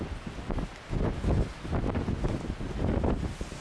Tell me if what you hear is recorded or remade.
recorded